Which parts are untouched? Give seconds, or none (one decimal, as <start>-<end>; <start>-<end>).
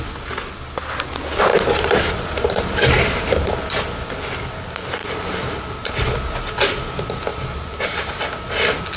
0.0-1.5; 3.5-5.0; 5.9-7.3; 8.2-9.0